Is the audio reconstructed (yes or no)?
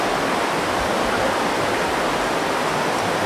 no